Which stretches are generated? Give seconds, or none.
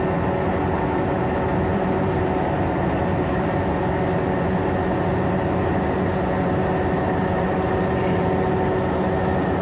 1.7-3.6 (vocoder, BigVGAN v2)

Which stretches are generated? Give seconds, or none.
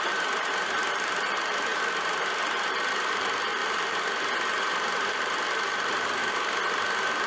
0.0-3.6 (vocoder, BigVGAN v2); 4.6-6.2